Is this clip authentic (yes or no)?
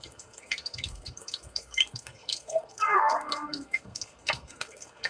no